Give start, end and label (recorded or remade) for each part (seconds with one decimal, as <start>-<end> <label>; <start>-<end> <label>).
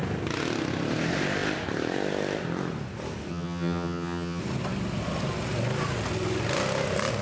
0.0-3.3 recorded; 3.3-4.4 remade; 4.4-7.2 recorded